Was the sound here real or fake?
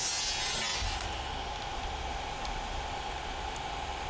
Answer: real